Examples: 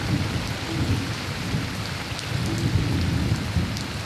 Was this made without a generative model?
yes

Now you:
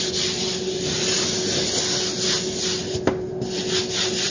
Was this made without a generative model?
yes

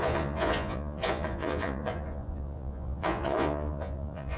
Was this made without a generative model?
no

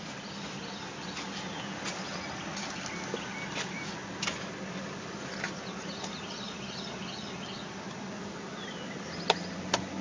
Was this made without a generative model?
yes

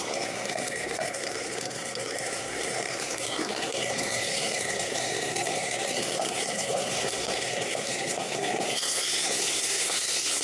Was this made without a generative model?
no